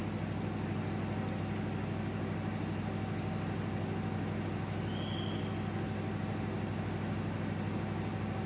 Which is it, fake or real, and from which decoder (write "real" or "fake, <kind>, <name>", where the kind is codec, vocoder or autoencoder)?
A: real